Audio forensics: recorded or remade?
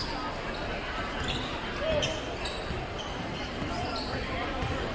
recorded